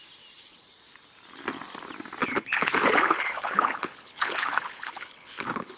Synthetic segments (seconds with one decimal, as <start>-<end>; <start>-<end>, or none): 2.2-5.8

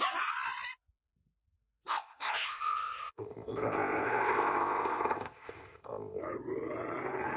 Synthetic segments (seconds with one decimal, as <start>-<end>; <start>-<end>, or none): 1.9-6.2